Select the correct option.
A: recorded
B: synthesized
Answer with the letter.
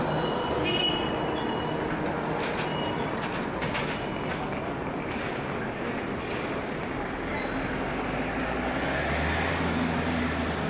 A